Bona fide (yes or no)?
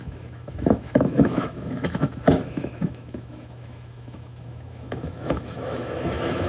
no